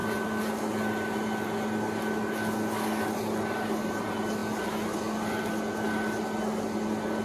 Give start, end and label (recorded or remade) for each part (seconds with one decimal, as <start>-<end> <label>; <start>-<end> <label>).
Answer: 0.0-7.2 recorded